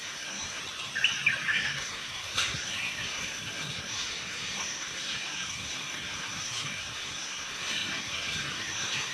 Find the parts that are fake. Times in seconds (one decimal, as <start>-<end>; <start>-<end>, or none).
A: 0.0-0.6; 1.5-9.1